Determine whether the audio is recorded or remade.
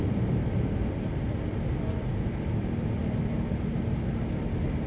recorded